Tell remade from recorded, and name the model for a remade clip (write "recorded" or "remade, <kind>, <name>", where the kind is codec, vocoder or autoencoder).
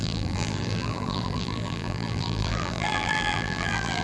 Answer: remade, vocoder, BigVGAN v2